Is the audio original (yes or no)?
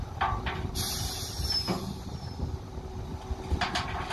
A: yes